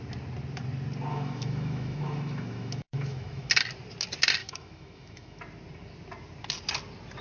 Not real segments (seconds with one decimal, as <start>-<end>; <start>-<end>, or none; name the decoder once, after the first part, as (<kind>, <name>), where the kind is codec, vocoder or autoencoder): 1.1-3.5 (autoencoder, DAC-VAE); 4.4-5.4